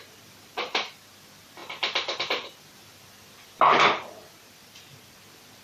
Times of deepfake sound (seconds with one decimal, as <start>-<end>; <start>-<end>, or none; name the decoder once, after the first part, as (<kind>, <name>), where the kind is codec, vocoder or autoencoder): none

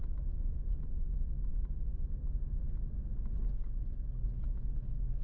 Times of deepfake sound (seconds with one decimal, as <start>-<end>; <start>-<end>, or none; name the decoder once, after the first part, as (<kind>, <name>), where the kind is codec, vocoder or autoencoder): none

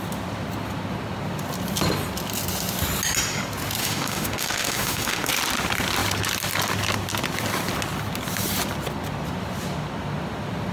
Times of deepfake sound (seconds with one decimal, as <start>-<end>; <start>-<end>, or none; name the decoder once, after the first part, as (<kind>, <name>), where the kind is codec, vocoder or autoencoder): 3.8-5.3 (autoencoder, DAC-VAE)

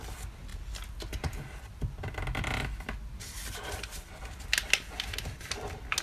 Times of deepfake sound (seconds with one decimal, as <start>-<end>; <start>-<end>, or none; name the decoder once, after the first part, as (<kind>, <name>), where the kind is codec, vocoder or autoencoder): none

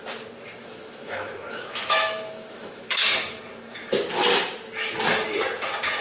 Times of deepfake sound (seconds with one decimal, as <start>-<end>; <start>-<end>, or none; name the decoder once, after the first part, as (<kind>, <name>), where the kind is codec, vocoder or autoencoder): 0.6-3.4 (autoencoder, DAC-VAE)

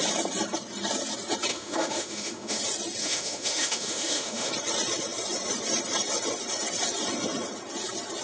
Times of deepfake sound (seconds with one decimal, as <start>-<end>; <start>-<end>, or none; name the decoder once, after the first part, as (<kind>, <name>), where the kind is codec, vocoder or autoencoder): 1.5-2.6 (autoencoder, DAC-VAE); 3.0-4.5

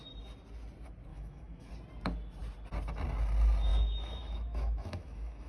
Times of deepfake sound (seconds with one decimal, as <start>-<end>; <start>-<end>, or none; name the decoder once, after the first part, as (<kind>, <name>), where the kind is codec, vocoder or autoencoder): 1.1-1.7 (autoencoder, DAC-VAE); 3.7-5.5